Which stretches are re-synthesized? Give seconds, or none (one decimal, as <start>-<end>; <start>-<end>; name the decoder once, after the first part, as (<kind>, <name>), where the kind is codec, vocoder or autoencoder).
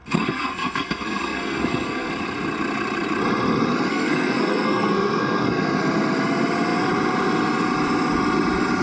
0.0-2.1 (codec, SNAC); 3.9-5.8